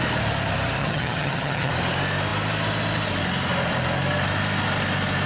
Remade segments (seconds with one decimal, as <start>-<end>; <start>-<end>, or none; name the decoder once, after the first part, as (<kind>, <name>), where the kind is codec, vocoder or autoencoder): 0.8-1.7 (vocoder, HiFi-GAN)

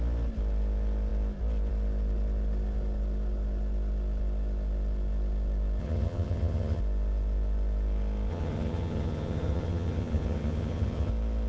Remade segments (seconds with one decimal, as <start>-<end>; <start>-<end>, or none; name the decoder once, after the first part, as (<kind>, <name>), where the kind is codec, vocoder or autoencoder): 5.8-6.8 (vocoder, HiFi-GAN); 8.3-11.1

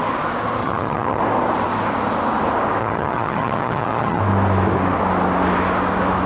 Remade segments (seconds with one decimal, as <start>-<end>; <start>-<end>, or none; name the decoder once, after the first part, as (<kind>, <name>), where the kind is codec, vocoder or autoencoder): 0.6-1.2 (vocoder, HiFi-GAN); 2.8-4.2